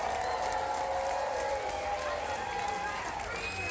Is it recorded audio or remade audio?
recorded